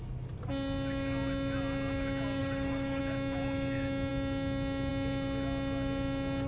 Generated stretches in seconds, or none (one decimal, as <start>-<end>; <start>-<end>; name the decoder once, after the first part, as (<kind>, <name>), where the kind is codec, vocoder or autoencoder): 2.4-3.0 (codec, DAC)